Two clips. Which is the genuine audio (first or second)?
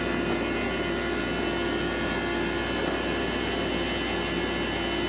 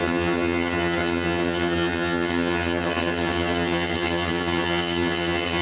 first